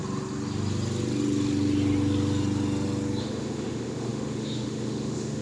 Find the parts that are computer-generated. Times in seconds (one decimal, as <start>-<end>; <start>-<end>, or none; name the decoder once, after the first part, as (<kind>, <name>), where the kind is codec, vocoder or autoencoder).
3.2-5.4 (autoencoder, DAC-VAE)